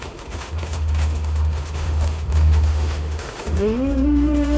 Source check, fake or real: fake